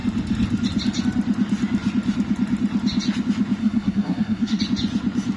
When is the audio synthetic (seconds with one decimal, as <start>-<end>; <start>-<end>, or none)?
3.6-4.6